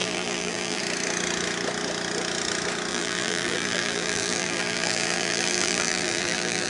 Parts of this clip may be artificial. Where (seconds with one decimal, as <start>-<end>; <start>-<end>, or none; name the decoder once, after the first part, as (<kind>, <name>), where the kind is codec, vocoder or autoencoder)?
0.0-0.8 (vocoder, BigVGAN v2); 2.9-6.7